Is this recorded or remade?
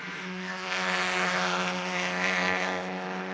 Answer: remade